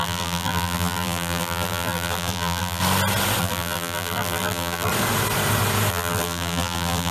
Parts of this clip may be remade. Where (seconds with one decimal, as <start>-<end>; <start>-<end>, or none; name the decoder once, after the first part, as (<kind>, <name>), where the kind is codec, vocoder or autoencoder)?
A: 0.0-2.8 (vocoder, BigVGAN v2); 3.4-4.9; 5.9-7.1